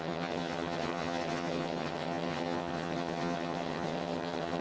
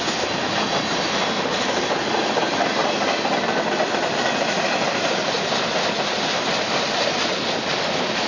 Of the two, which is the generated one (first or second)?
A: first